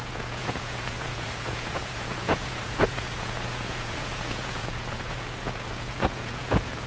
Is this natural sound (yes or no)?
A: no